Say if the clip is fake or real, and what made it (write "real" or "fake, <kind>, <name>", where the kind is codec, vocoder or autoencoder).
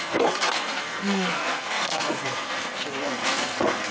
fake, codec, SNAC